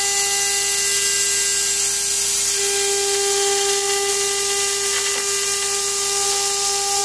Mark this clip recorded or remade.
recorded